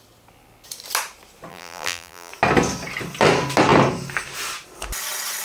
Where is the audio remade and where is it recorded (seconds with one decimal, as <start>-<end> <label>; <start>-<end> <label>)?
0.0-1.5 recorded; 1.5-2.3 remade; 2.3-5.4 recorded